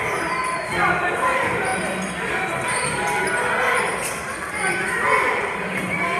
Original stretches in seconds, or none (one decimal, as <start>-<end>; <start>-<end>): 0.0-6.2

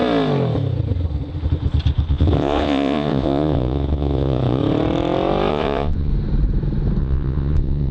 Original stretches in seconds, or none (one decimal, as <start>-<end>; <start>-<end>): 0.0-2.1; 4.6-5.5; 6.1-7.0

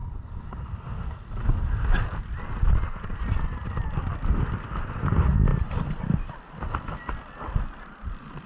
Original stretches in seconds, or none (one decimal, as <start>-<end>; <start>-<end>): 0.0-4.1